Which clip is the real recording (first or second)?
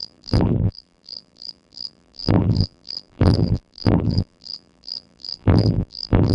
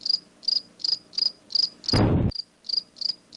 second